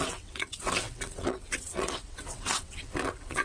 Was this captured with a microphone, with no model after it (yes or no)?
no